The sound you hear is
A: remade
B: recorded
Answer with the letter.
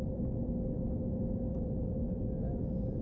A